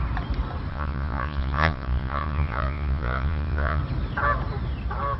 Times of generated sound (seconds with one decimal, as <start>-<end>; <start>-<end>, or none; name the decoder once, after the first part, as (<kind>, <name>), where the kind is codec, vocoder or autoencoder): 0.7-3.8 (vocoder, Vocos)